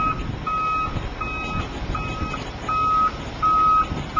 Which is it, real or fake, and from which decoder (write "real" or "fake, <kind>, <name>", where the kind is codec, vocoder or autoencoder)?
real